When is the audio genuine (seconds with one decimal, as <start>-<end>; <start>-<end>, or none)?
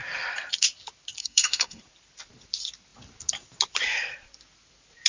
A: 0.0-1.2; 1.8-5.1